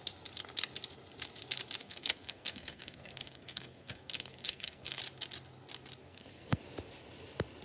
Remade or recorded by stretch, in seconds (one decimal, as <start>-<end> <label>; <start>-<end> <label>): 0.0-1.8 recorded; 1.8-5.0 remade; 5.0-6.0 recorded; 6.0-6.6 remade; 6.6-7.6 recorded

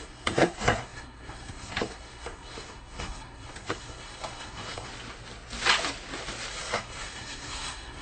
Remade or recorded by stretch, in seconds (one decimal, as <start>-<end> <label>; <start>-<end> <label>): 0.0-4.9 remade; 4.9-6.5 recorded; 6.5-8.0 remade